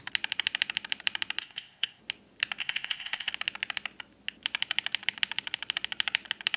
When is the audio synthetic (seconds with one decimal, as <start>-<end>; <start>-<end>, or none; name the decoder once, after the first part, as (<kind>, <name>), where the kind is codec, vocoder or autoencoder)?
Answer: 1.4-2.0 (codec, ZipCodec); 2.6-3.3